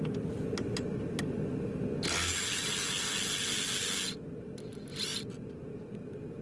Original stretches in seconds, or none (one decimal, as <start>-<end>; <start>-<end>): 0.0-6.4